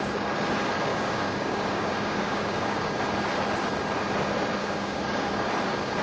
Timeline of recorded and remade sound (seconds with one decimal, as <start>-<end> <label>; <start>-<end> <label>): 0.0-0.9 recorded; 0.9-2.9 remade; 2.9-4.6 recorded; 4.6-5.5 remade; 5.5-6.0 recorded